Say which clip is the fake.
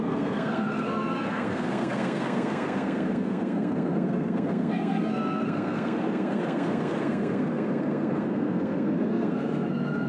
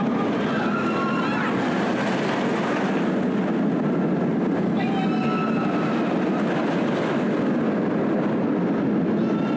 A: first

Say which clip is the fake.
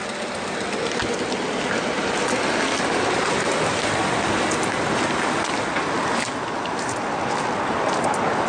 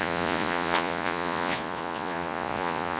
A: second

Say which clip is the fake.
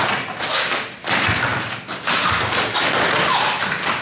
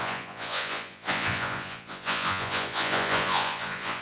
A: second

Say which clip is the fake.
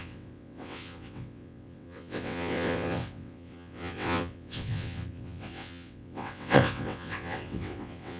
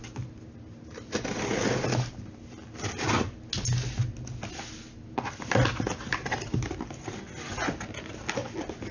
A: first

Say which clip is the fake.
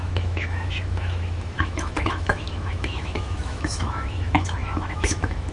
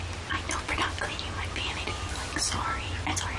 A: first